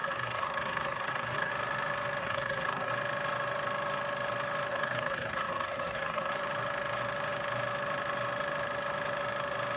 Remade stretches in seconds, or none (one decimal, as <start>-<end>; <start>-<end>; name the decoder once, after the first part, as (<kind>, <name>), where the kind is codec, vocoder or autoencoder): 0.0-1.5 (codec, SNAC); 2.2-2.9; 4.7-6.3